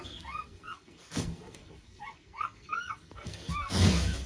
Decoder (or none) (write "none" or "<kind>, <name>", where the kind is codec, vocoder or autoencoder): codec, SNAC